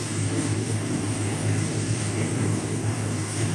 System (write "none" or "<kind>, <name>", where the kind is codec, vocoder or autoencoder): codec, DAC